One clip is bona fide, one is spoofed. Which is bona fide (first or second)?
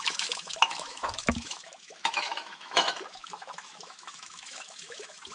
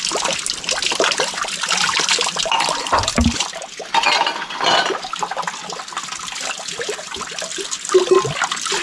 second